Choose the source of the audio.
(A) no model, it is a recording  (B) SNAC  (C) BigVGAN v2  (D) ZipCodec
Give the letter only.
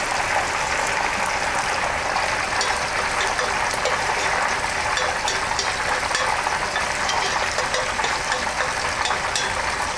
A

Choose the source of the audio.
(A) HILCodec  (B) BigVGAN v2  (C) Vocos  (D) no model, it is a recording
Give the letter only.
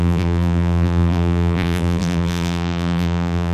B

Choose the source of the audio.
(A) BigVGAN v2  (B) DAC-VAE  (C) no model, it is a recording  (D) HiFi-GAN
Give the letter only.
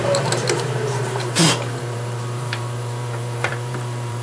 A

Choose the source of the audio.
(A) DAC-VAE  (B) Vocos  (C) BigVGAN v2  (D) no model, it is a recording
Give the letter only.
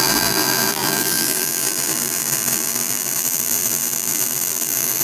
C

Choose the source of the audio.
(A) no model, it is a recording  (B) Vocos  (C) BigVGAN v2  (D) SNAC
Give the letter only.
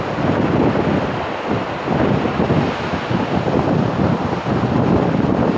A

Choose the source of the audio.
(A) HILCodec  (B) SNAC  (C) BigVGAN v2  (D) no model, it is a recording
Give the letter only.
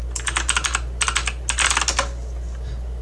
D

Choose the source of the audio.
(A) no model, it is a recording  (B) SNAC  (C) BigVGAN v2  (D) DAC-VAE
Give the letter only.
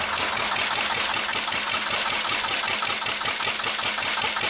A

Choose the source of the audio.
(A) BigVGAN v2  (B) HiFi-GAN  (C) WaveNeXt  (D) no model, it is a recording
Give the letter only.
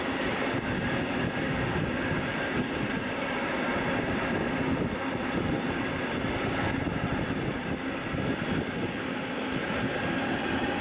A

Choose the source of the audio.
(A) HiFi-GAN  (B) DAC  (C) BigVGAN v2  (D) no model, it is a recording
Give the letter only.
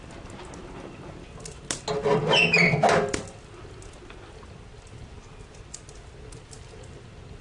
D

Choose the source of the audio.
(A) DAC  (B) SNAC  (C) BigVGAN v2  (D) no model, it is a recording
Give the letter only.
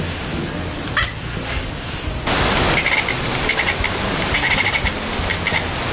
C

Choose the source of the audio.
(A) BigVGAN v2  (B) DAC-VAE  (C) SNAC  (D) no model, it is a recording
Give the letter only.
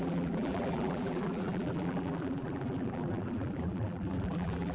A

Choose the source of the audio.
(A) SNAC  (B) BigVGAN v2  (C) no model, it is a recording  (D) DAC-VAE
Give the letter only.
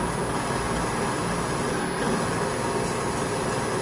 C